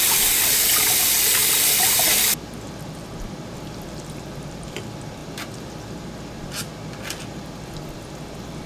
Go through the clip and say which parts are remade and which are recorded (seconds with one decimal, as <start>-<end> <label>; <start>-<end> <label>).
0.0-1.4 recorded; 1.4-2.7 remade; 2.7-8.7 recorded